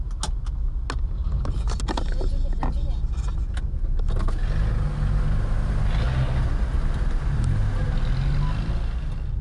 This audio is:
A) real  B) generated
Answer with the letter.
A